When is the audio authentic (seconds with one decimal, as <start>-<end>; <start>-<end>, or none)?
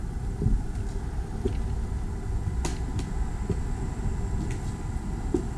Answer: 0.0-5.6